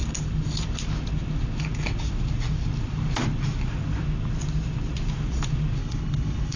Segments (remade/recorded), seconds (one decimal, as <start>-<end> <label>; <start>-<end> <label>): 0.0-5.8 recorded; 5.8-6.6 remade